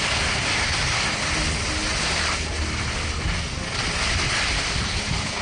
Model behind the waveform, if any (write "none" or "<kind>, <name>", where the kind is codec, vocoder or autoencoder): none